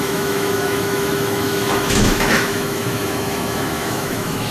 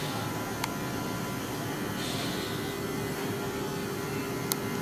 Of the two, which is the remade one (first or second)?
first